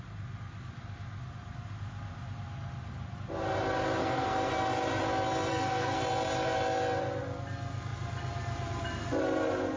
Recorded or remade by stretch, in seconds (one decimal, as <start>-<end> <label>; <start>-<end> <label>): 0.0-4.0 recorded; 4.0-4.5 remade; 4.5-5.5 recorded; 5.5-6.0 remade; 6.0-9.8 recorded